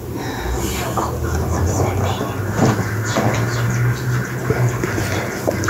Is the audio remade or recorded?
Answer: recorded